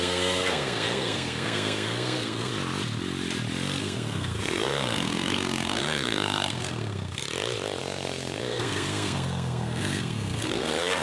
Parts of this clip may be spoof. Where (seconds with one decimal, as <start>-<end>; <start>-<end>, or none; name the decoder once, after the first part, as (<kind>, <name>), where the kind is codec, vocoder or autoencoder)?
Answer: 0.0-2.5 (codec, SNAC); 3.8-7.2; 7.8-11.0